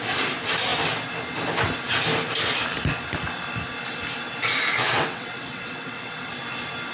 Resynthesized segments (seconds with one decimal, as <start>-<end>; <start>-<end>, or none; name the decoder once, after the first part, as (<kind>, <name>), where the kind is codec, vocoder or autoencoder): 4.7-6.3 (vocoder, WaveNeXt)